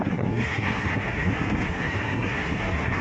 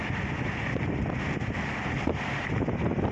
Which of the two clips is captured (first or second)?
second